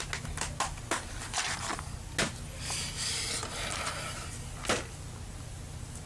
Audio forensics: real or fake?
real